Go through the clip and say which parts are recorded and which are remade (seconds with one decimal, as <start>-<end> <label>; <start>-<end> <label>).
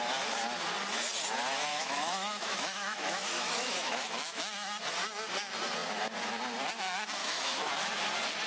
0.0-1.7 recorded; 1.7-4.4 remade; 4.4-7.2 recorded; 7.2-7.7 remade; 7.7-8.5 recorded